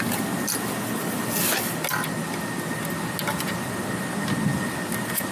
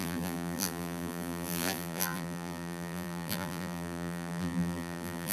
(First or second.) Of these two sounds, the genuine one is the first